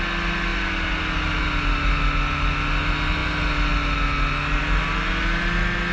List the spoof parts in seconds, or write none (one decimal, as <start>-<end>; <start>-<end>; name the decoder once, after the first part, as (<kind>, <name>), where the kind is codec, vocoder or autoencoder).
none